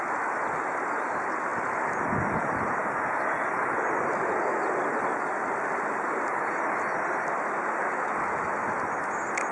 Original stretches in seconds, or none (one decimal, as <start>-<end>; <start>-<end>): 0.0-9.5